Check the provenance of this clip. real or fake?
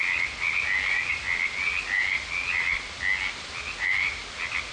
real